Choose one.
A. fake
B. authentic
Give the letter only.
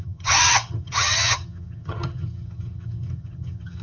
A